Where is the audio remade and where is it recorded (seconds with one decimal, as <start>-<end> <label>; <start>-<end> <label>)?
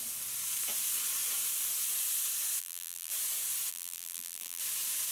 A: 0.0-2.6 recorded; 2.6-3.1 remade; 3.1-3.7 recorded; 3.7-4.6 remade; 4.6-5.1 recorded